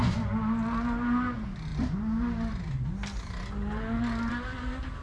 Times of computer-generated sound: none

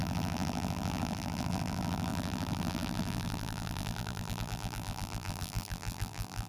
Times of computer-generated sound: 0.0-6.5 (vocoder, BigVGAN v2)

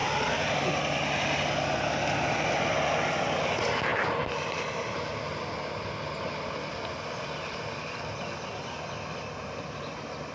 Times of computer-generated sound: none

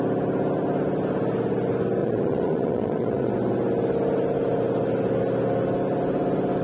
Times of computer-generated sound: 2.0-3.3 (vocoder, Vocos)